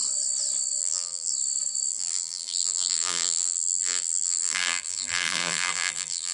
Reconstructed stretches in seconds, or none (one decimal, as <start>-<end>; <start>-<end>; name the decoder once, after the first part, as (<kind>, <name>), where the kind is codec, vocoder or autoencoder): 0.8-1.3 (vocoder, BigVGAN v2); 1.9-6.3